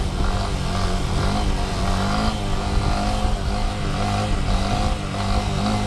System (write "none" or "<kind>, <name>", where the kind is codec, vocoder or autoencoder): none